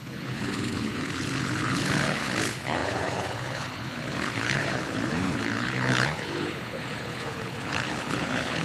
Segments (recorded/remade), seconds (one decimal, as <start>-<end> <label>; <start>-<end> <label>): 0.0-8.6 remade